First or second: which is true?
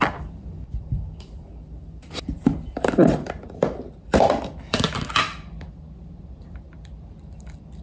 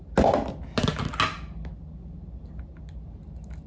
second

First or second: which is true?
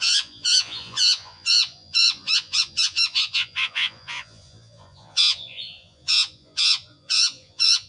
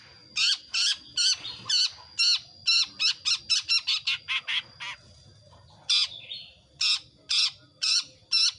second